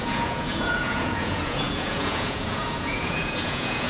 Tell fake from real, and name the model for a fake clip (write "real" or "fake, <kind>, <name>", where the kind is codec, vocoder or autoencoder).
fake, vocoder, Vocos